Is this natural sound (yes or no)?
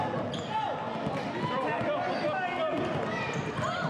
yes